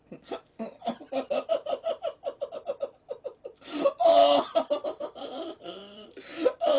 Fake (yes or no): yes